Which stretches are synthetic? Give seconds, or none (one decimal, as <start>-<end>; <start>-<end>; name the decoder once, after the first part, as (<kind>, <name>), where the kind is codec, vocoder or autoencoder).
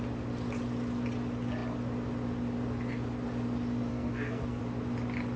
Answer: 3.9-4.6 (codec, SNAC)